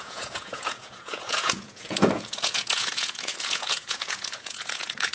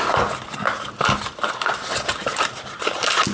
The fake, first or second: first